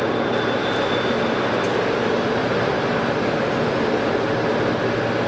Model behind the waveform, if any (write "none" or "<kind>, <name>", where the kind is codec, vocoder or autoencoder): none